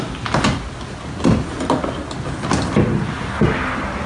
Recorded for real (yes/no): yes